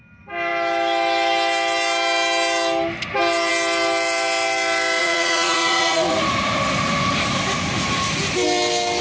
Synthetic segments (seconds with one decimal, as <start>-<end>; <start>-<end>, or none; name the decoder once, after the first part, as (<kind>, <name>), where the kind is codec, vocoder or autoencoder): 5.0-6.1 (vocoder, Vocos)